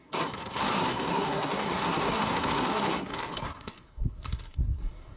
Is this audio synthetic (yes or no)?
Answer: yes